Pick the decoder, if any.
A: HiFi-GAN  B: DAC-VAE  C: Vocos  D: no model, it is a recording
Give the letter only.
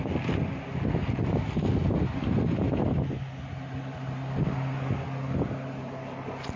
D